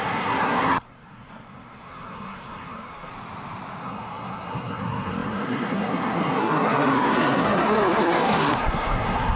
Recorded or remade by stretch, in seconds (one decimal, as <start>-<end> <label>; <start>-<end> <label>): 0.0-3.1 remade; 3.1-3.8 recorded; 3.8-9.4 remade